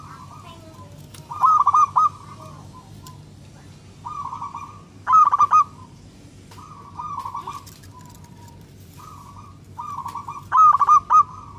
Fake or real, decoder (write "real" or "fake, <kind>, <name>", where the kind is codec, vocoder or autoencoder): real